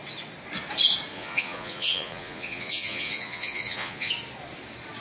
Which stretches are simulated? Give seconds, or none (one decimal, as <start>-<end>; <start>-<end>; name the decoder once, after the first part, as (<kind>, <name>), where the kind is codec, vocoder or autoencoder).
1.1-4.1 (vocoder, Vocos)